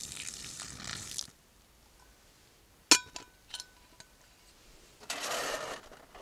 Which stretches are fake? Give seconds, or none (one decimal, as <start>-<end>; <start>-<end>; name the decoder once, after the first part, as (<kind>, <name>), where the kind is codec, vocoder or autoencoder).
none